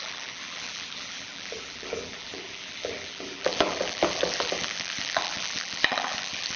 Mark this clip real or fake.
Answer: fake